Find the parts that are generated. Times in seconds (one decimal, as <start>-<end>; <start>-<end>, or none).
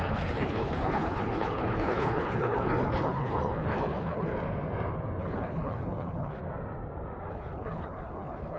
0.0-4.3; 5.2-6.4; 7.3-8.6